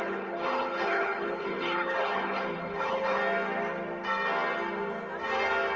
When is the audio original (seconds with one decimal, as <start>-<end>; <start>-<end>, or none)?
3.2-5.8

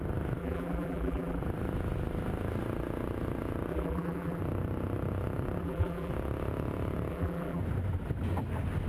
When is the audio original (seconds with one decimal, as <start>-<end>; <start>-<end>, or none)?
0.0-0.4; 1.4-3.7; 4.4-5.6; 6.1-7.1; 7.6-8.9

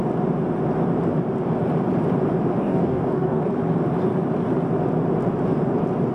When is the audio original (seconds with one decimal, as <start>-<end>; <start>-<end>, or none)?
0.0-2.6; 3.5-6.1

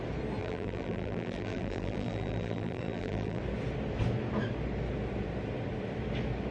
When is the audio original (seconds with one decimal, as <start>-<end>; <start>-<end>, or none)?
0.0-0.4; 3.4-6.5

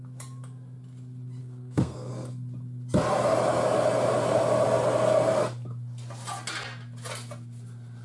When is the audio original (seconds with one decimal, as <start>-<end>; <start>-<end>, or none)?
0.0-1.4; 2.1-8.0

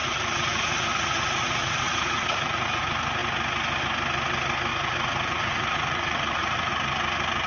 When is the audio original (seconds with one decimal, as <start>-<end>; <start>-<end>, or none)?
2.8-4.7; 6.7-7.5

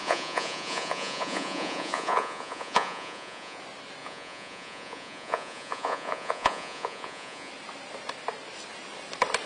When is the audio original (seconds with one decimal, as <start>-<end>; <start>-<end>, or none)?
3.6-4.0; 7.5-9.5

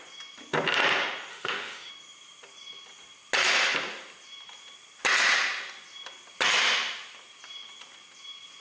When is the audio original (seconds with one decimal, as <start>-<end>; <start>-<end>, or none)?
0.0-1.3; 1.9-8.6